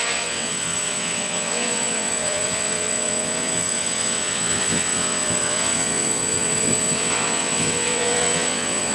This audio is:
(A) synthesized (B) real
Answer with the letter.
A